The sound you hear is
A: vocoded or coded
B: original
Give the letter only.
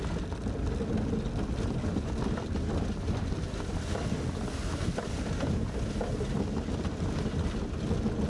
B